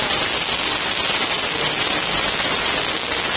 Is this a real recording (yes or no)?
yes